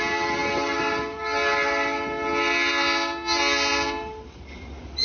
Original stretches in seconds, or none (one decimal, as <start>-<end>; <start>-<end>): 0.0-5.0